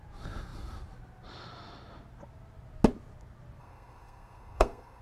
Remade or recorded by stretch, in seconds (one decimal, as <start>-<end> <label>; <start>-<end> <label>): 0.0-3.6 recorded; 3.6-5.0 remade